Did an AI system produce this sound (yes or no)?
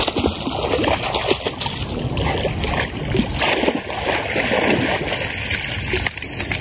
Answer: no